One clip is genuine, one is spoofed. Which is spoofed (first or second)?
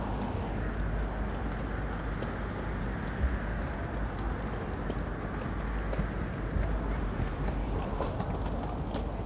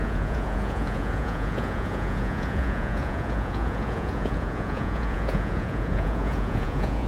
second